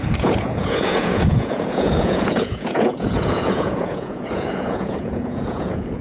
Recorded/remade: remade